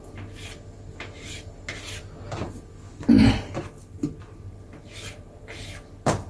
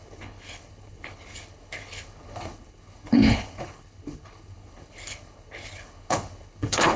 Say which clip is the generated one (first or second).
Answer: second